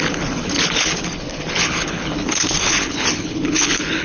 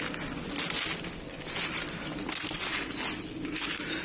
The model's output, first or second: first